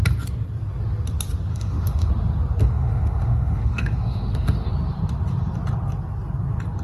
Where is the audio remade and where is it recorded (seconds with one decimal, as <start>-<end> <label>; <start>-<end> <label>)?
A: 0.0-1.5 recorded; 1.5-2.1 remade; 2.1-2.6 recorded; 2.6-4.7 remade; 4.7-6.8 recorded